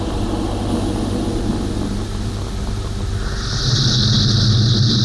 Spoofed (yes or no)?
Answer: no